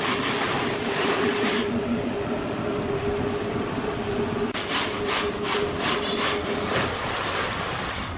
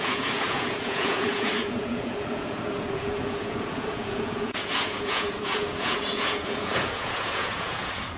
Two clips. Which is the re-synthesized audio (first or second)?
second